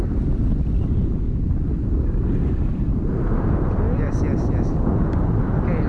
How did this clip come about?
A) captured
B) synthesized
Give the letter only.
A